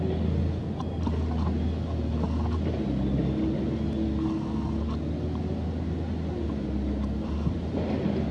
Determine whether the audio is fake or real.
real